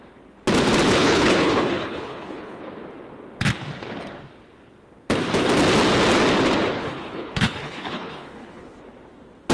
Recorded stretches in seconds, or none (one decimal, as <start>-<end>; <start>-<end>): 0.0-1.0; 2.6-6.8; 8.8-9.5